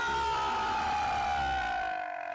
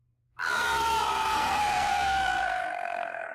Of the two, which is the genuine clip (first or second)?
first